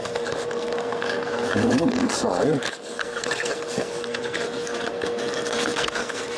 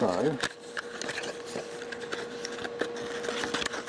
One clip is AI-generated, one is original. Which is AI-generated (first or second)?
first